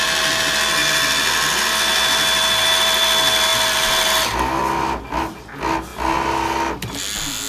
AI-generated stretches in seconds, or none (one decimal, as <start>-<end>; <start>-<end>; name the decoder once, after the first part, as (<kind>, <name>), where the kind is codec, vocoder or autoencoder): none